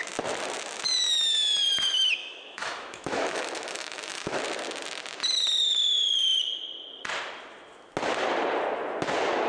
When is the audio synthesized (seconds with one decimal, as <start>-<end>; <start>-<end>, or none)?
2.2-4.4